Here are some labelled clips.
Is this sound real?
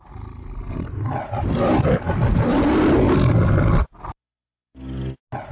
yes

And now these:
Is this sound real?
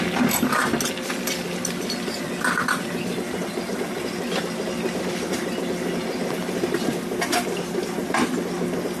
yes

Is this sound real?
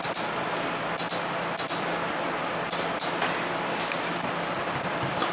yes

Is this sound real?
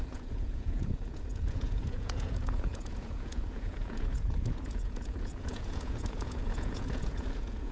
no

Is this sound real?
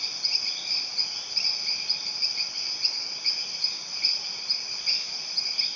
yes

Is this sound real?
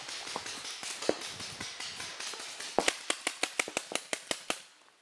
yes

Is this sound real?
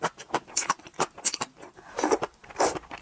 no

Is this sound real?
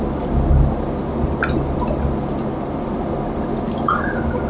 yes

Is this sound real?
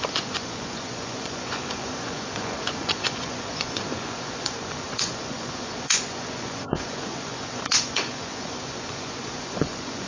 no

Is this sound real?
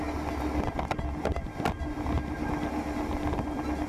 yes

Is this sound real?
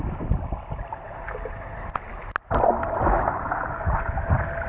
yes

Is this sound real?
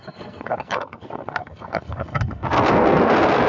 no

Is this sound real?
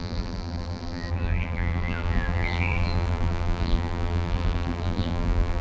no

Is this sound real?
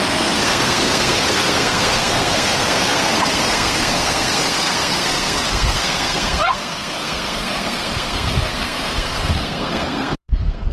no